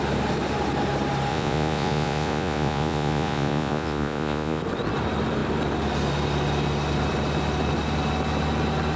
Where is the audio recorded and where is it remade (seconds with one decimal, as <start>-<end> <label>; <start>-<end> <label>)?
0.0-1.3 recorded; 1.3-4.6 remade; 4.6-9.0 recorded